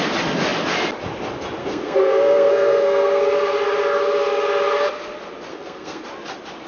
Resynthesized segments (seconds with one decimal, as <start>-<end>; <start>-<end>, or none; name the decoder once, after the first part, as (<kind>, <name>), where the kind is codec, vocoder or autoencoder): 1.6-3.2 (codec, SNAC); 5.5-6.0